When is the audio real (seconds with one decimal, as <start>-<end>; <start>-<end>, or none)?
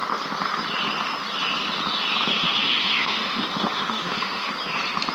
0.0-2.3; 4.5-5.1